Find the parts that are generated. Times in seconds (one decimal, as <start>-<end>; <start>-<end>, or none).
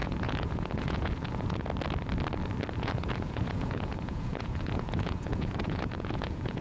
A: 0.0-1.7; 2.7-6.6